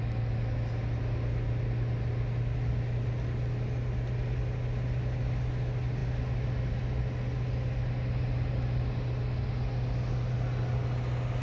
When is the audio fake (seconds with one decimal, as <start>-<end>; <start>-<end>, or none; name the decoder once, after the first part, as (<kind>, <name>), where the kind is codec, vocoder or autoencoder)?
none